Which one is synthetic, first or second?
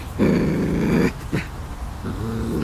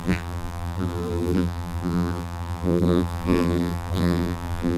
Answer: second